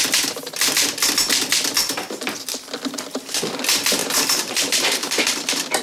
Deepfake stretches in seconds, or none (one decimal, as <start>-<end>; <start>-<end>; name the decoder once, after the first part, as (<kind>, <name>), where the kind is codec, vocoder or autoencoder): 4.0-5.2 (vocoder, BigVGAN v2)